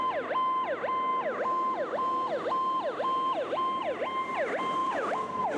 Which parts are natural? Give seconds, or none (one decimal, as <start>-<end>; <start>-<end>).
0.0-5.6